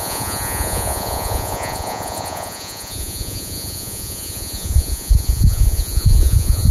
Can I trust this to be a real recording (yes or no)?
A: no